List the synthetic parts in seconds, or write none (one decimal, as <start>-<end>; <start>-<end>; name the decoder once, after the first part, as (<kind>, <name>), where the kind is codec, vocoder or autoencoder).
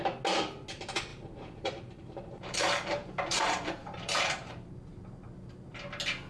1.1-4.7 (vocoder, BigVGAN v2)